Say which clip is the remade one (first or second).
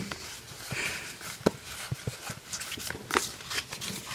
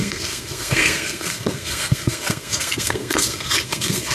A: second